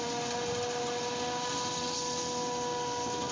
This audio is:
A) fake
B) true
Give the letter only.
B